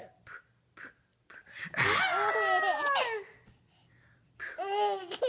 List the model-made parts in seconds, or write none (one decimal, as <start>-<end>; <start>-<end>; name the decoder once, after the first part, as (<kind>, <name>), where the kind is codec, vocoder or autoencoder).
none